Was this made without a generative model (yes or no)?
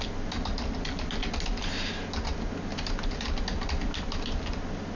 yes